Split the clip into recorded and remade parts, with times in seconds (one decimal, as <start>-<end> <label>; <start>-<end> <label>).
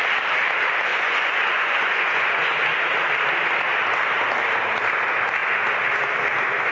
0.0-0.9 recorded; 0.9-2.6 remade; 2.6-6.7 recorded